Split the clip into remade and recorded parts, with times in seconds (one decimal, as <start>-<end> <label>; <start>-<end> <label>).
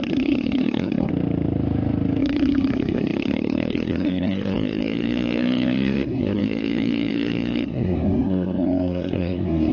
0.0-1.1 remade; 1.1-2.2 recorded; 2.2-9.7 remade